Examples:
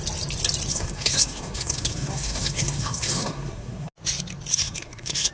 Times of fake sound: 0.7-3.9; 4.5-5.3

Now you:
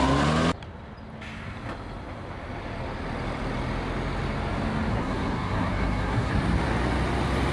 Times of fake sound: 4.9-6.3